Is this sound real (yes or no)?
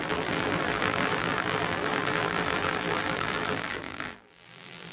no